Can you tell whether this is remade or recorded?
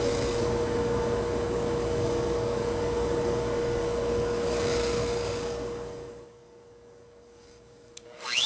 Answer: remade